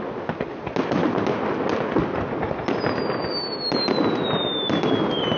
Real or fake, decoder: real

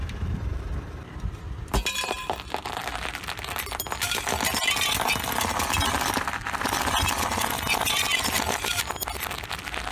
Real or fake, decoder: real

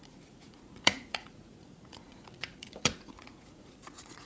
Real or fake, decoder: fake, vocoder, Vocos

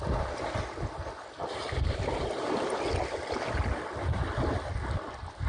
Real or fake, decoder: real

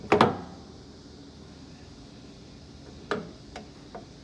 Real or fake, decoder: real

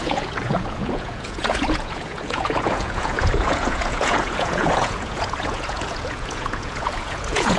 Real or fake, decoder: fake, vocoder, Vocos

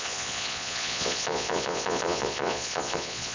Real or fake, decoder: fake, vocoder, Vocos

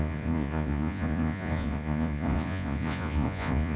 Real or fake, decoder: fake, vocoder, Vocos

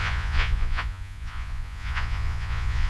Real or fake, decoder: fake, vocoder, Vocos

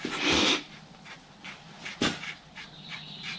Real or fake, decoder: real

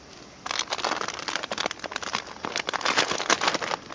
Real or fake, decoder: real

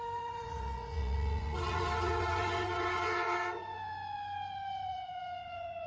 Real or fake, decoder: fake, vocoder, Vocos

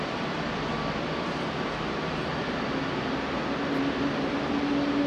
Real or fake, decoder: real